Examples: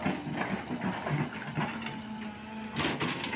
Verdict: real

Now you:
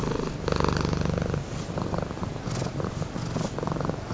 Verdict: real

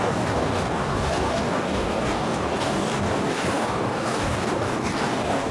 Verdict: fake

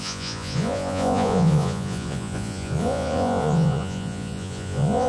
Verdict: fake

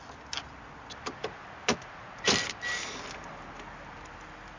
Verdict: real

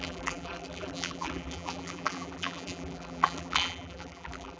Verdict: fake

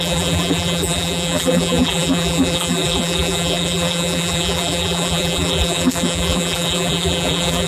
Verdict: fake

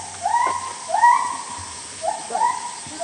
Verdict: real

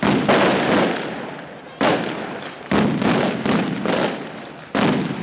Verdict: real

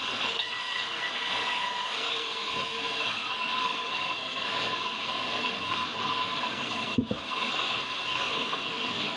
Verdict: fake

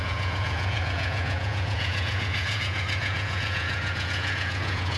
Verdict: fake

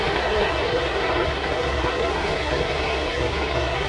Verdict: fake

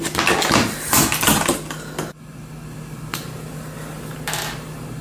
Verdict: real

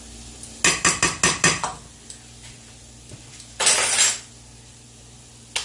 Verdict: real